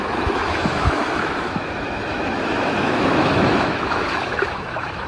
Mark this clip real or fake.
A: fake